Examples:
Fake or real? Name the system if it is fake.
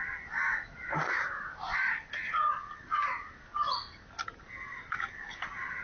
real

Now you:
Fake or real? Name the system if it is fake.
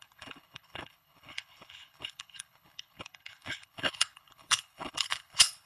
fake, codec, HILCodec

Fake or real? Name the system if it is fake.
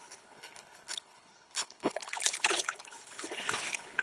fake, codec, HILCodec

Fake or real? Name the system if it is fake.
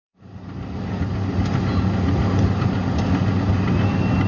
real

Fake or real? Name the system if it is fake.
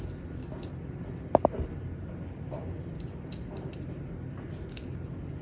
real